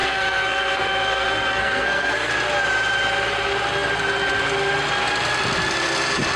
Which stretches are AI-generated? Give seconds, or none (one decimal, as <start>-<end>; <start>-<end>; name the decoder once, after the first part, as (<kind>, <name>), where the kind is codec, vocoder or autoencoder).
0.0-2.3 (codec, SNAC)